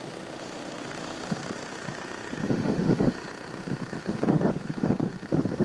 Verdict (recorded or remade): remade